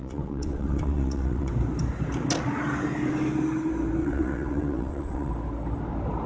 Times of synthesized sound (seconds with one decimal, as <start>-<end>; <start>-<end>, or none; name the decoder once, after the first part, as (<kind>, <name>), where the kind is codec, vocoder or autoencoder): 0.0-1.5 (vocoder, WaveNeXt); 4.0-5.3